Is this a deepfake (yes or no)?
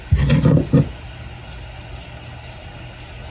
no